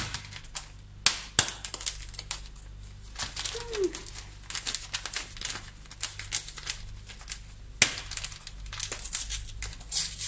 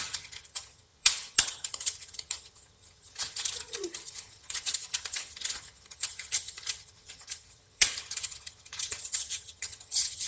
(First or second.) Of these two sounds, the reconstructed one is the second